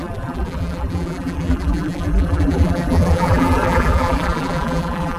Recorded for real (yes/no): no